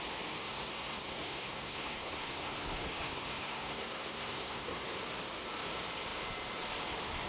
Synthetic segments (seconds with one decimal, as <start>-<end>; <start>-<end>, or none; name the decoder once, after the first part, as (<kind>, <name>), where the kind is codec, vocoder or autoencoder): 0.4-4.8 (codec, SNAC)